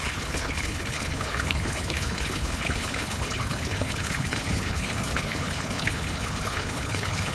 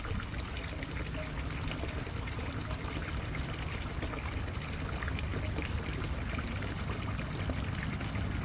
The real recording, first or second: second